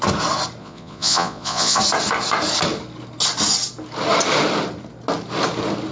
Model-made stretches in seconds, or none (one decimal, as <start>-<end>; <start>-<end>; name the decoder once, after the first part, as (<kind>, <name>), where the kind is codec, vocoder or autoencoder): 0.6-1.8 (vocoder, Vocos)